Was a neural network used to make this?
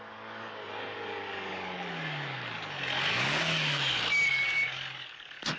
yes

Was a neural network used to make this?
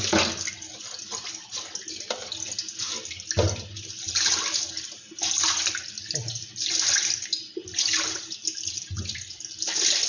no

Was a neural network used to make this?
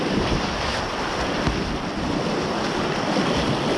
no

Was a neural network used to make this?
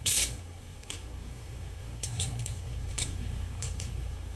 yes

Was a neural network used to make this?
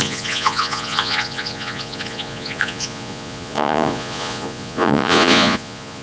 yes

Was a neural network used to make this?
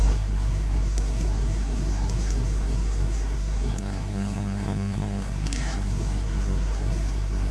yes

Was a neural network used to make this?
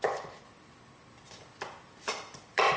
yes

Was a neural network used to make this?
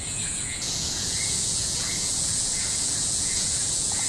yes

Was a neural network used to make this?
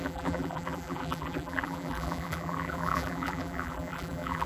yes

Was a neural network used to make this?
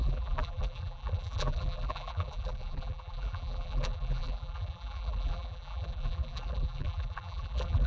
yes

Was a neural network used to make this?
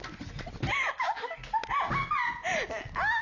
no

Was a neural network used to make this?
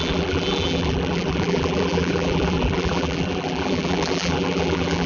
yes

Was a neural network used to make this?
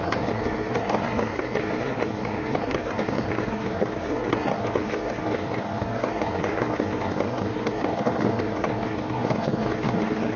yes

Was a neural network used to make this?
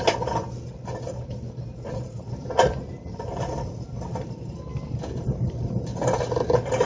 no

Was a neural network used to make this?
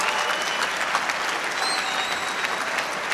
no